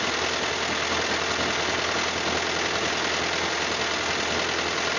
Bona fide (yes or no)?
yes